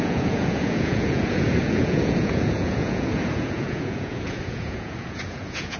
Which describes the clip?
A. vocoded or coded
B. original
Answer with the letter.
A